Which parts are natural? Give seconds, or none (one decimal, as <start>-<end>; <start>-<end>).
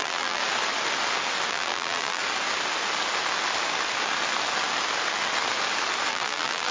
0.4-1.5; 2.2-6.1